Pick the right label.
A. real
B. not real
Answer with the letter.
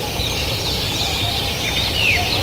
A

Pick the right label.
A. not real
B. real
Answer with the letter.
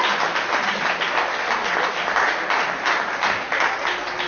B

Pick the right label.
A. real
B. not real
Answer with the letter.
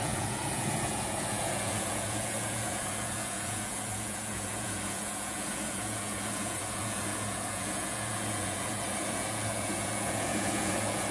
B